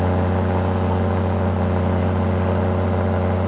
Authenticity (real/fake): real